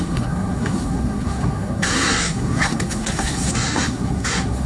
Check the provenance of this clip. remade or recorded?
remade